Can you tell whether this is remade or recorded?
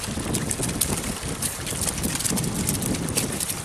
recorded